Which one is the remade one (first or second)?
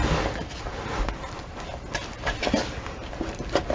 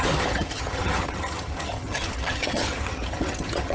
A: second